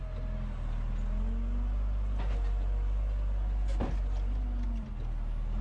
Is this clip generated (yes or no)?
no